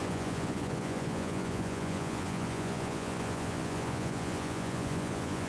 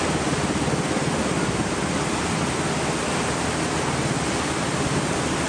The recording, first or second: second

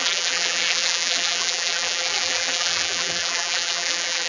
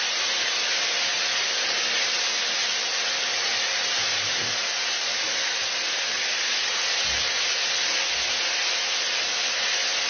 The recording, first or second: second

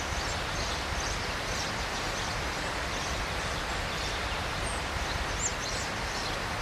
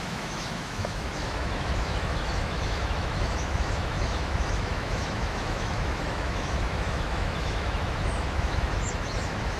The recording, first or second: first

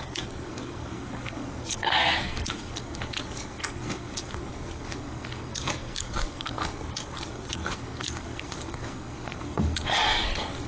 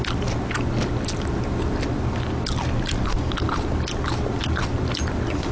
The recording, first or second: second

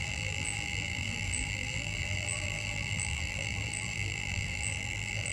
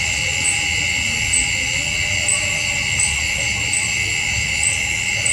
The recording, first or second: second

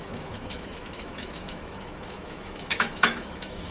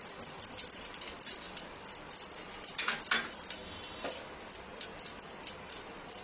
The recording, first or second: second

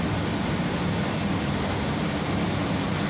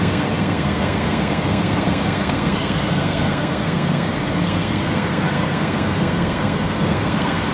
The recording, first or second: first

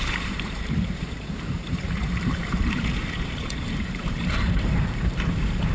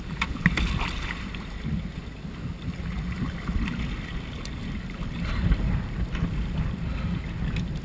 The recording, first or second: second